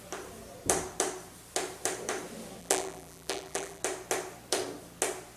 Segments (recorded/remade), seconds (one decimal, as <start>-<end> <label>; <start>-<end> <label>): 0.0-2.6 recorded; 2.6-3.8 remade; 3.8-5.4 recorded